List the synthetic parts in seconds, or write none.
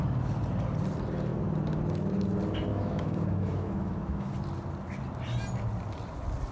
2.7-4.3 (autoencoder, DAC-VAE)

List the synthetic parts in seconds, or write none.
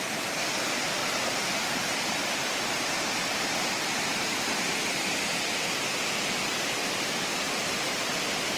1.0-5.5 (vocoder, BigVGAN v2)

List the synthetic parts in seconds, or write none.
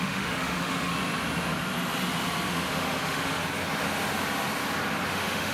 0.0-0.9 (autoencoder, DAC-VAE); 2.5-3.4; 5.1-5.5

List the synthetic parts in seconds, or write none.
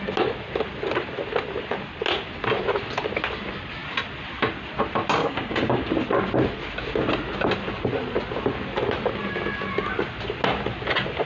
5.2-5.9 (codec, DAC)